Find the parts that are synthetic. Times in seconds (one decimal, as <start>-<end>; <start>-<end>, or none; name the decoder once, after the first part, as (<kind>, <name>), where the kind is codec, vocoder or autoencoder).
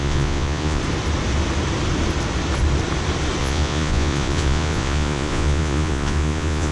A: 0.0-0.8 (vocoder, Vocos); 3.4-6.7